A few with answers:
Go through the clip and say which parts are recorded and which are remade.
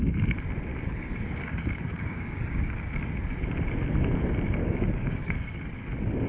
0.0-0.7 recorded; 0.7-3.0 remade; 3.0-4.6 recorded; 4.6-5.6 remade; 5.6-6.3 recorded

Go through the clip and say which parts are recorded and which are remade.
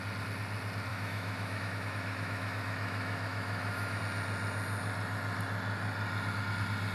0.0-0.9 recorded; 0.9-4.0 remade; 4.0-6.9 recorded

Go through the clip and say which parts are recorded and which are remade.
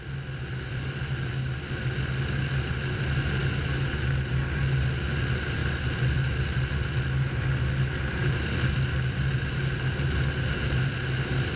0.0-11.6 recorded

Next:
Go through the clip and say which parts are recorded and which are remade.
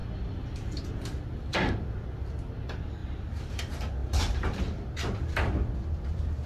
0.0-3.0 recorded; 3.0-3.6 remade; 3.6-4.0 recorded; 4.0-4.6 remade; 4.6-6.5 recorded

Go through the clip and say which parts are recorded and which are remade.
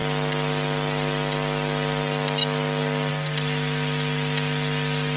0.0-5.2 recorded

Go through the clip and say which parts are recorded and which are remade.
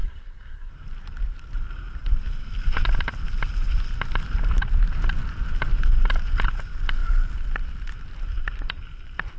0.0-0.7 remade; 0.7-9.4 recorded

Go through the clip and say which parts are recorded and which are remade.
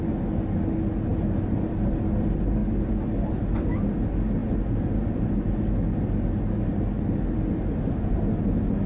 0.0-8.9 recorded